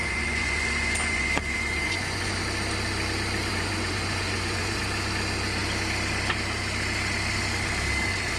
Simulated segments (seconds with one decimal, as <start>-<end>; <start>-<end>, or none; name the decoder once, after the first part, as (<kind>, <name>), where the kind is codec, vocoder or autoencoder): 0.0-2.4 (vocoder, Vocos); 3.5-4.8